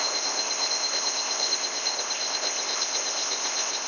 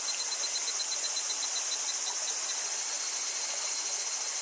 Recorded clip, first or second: second